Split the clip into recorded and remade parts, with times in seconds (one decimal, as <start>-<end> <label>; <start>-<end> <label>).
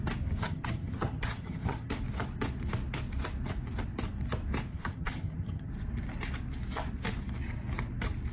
0.0-0.4 recorded; 0.4-1.9 remade; 1.9-4.7 recorded; 4.7-5.7 remade; 5.7-8.3 recorded